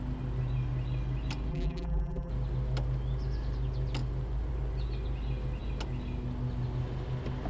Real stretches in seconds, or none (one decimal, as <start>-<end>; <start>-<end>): 0.0-1.5; 2.3-7.5